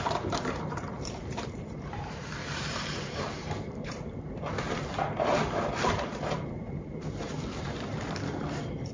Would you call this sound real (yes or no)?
no